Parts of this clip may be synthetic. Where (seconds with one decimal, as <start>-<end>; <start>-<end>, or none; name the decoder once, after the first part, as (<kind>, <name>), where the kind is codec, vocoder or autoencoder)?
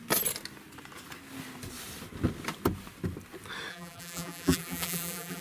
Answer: 3.7-5.4 (vocoder, BigVGAN v2)